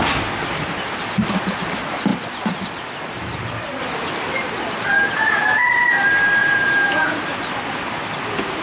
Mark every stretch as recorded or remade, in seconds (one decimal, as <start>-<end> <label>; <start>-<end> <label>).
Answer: 0.0-4.9 recorded; 4.9-5.7 remade; 5.7-6.4 recorded; 6.4-7.2 remade; 7.2-8.6 recorded